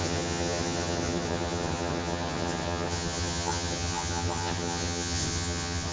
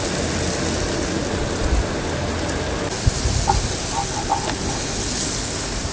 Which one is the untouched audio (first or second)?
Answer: second